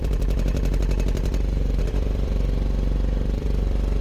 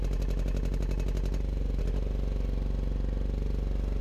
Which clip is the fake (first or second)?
first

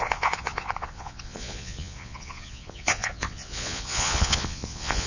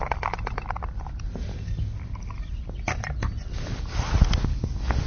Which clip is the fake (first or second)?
first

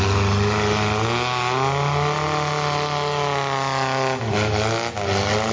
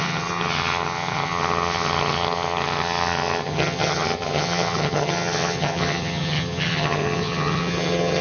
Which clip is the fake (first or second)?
second